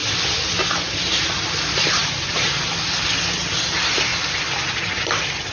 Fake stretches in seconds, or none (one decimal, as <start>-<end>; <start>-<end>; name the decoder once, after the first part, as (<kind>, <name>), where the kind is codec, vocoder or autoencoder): none